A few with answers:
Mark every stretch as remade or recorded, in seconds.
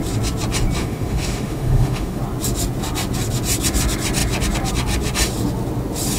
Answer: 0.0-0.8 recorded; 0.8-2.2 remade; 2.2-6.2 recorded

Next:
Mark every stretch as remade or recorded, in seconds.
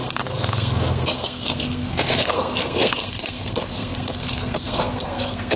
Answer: 0.0-5.6 remade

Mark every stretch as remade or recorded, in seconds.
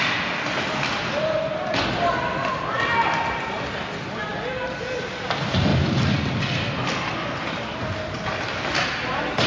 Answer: 0.0-9.5 recorded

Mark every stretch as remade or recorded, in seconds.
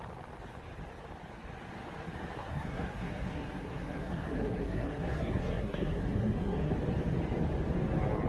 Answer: 0.0-2.4 recorded; 2.4-6.7 remade; 6.7-8.3 recorded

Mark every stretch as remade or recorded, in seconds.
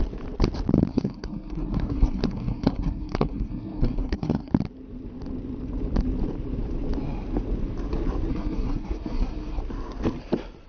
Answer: 0.0-0.9 recorded; 0.9-4.5 remade; 4.5-8.3 recorded; 8.3-9.6 remade; 9.6-10.7 recorded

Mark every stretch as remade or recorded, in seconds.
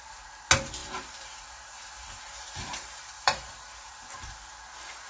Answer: 0.0-0.8 recorded; 0.8-3.9 remade; 3.9-5.1 recorded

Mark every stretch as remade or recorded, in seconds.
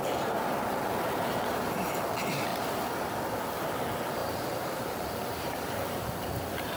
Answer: 0.0-2.5 remade; 2.5-3.6 recorded; 3.6-6.8 remade